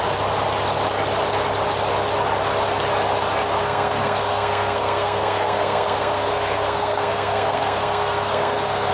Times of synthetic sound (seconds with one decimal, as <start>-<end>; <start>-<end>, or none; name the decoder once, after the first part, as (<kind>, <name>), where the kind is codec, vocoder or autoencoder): 3.4-8.9 (codec, SNAC)